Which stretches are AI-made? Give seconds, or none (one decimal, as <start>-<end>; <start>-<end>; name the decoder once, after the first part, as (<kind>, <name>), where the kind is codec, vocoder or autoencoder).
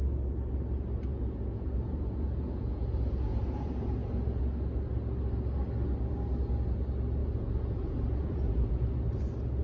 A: 1.1-4.4 (vocoder, Vocos); 7.2-8.9